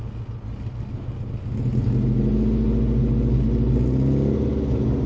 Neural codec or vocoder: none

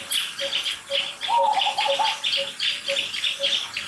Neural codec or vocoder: none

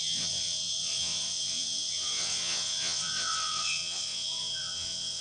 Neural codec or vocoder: vocoder, WaveNeXt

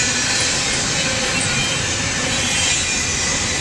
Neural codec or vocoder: none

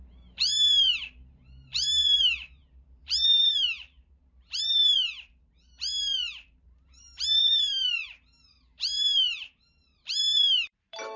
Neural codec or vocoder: vocoder, BigVGAN v2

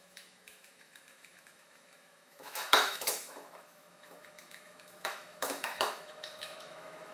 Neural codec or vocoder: autoencoder, DAC-VAE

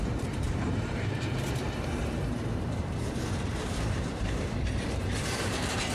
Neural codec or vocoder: vocoder, BigVGAN v2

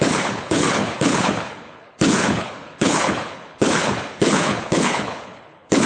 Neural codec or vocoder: codec, HILCodec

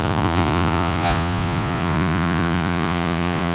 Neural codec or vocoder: vocoder, Vocos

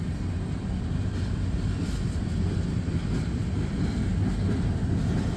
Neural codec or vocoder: none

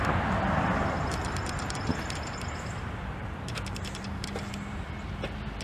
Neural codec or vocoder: none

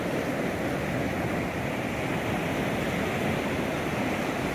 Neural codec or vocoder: none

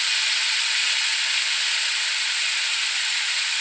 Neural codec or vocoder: none